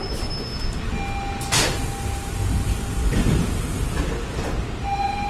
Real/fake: real